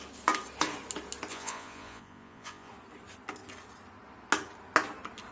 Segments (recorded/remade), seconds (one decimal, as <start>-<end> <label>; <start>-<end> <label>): 0.0-1.3 recorded; 1.3-2.7 remade; 2.7-5.3 recorded